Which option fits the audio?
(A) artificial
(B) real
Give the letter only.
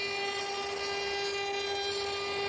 B